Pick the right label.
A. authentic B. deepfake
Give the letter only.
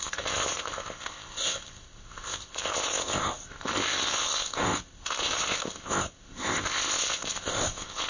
B